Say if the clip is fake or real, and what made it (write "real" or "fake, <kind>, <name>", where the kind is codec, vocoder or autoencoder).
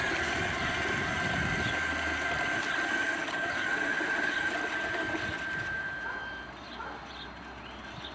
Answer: real